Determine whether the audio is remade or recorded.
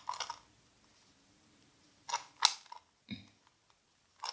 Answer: recorded